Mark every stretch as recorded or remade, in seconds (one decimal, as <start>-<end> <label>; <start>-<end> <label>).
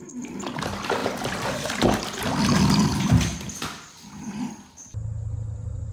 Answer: 0.0-1.0 recorded; 1.0-4.5 remade; 4.5-5.9 recorded